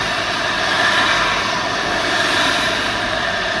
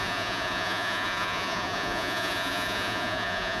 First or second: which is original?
first